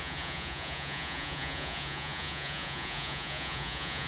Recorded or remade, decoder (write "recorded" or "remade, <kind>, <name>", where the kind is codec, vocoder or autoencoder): remade, vocoder, Vocos